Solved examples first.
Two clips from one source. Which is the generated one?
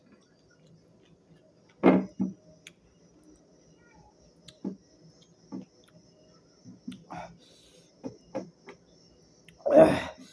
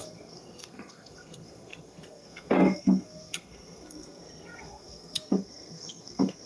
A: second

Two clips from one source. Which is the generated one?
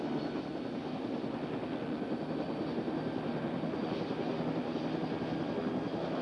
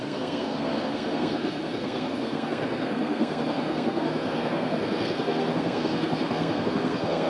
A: second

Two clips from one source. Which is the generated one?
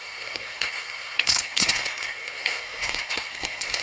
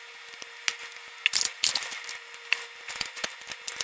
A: first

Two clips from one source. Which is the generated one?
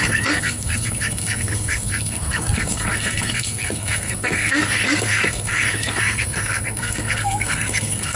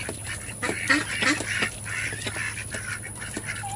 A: first